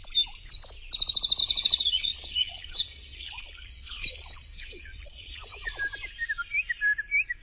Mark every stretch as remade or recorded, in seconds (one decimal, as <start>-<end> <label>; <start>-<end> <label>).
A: 0.0-1.4 recorded; 1.4-5.8 remade; 5.8-7.4 recorded